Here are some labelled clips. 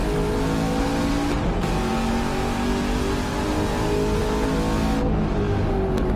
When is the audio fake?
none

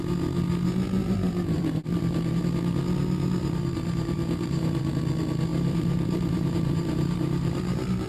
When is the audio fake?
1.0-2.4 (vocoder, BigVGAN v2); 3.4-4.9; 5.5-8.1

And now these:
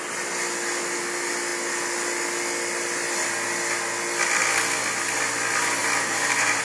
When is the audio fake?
5.8-6.6 (vocoder, BigVGAN v2)

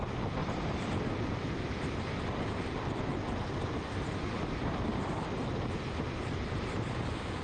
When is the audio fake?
0.4-1.0 (vocoder, BigVGAN v2); 5.4-6.4

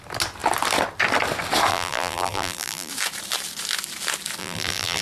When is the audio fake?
1.7-2.9 (vocoder, BigVGAN v2); 4.4-5.0

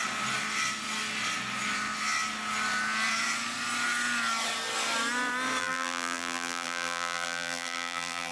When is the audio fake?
5.6-8.3 (vocoder, BigVGAN v2)